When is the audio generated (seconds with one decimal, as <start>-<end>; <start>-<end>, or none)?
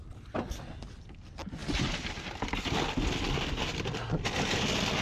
none